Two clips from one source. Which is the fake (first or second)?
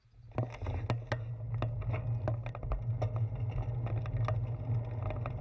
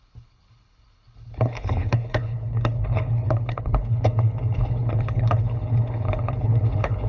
second